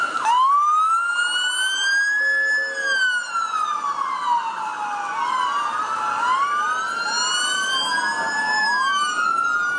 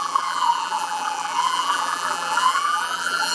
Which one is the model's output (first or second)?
second